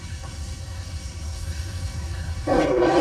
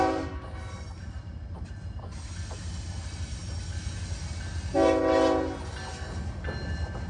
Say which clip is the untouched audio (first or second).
second